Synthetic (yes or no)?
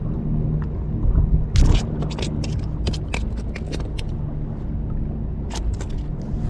no